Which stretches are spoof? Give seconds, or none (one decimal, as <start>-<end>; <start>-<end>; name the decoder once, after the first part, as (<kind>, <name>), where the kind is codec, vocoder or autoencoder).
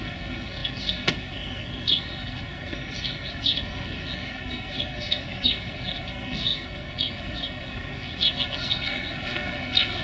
0.0-10.0 (codec, SNAC)